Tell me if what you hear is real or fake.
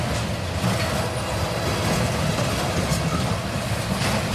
real